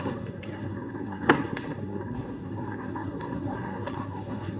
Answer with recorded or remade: remade